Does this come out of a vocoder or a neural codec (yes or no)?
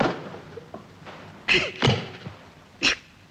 no